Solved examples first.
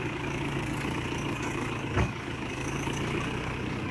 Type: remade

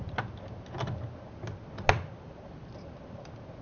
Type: recorded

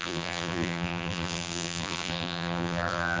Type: remade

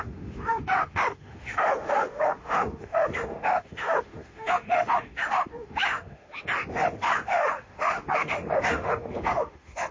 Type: remade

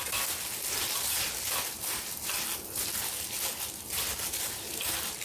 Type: recorded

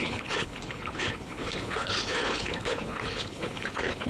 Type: remade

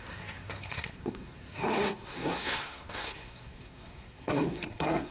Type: remade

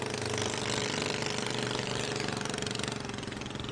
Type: recorded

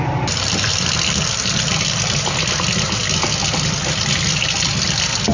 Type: recorded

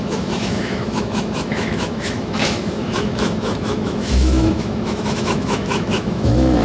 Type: remade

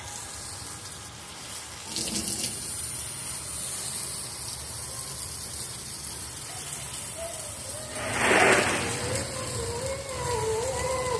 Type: recorded